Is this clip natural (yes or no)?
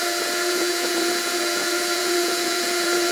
no